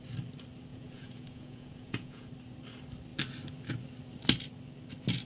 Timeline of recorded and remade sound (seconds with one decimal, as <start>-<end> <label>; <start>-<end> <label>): 0.0-0.7 recorded; 0.7-2.3 remade; 2.3-5.2 recorded